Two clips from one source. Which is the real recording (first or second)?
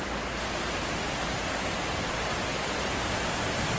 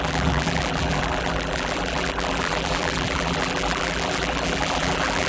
first